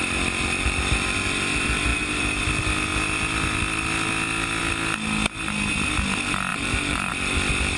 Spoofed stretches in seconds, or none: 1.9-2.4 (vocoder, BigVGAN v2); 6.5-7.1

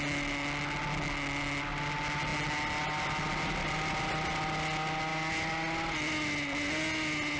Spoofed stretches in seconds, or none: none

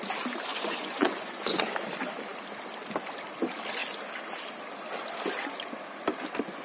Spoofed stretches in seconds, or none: 0.5-1.7 (vocoder, Vocos)

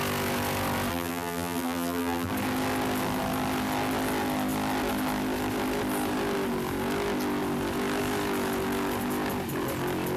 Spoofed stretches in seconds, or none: 0.9-2.3 (vocoder, BigVGAN v2)

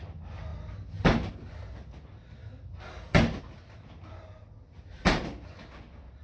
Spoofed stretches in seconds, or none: none

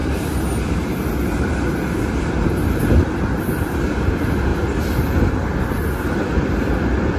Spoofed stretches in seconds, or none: none